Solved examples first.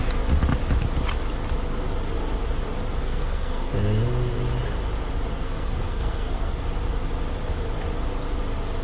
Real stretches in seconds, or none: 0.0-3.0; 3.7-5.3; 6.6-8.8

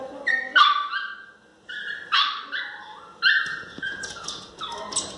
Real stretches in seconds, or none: 0.0-3.6; 4.5-5.2

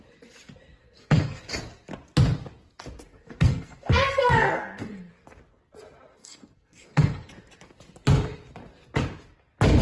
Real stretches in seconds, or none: 0.0-0.8; 1.4-3.1; 5.1-6.2; 7.3-9.8

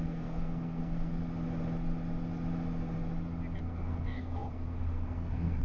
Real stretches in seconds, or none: 1.2-3.6

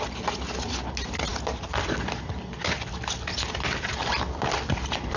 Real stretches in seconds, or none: 0.0-5.2

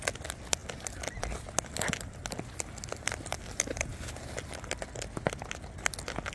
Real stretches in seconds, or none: 0.0-6.3

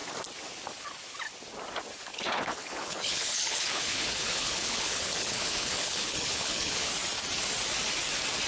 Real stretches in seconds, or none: 0.0-2.1; 6.9-8.5

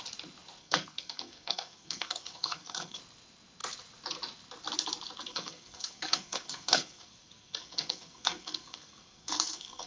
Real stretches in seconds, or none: 0.0-0.6; 3.0-5.3